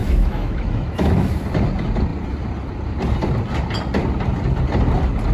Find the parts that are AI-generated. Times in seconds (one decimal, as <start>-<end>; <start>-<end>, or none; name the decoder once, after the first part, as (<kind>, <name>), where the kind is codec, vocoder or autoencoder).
0.0-1.3 (autoencoder, DAC-VAE)